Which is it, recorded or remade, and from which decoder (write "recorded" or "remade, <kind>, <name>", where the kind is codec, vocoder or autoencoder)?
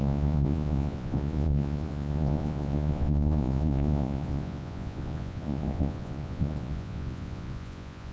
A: remade, vocoder, Vocos